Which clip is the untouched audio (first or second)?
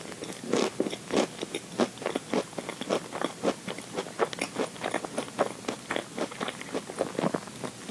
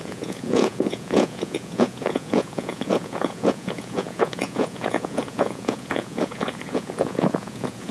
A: first